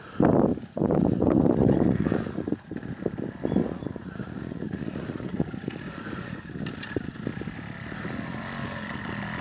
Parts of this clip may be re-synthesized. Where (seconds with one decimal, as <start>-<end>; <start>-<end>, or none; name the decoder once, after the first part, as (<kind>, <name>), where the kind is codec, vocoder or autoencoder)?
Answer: 0.5-2.9 (vocoder, Vocos); 3.6-6.4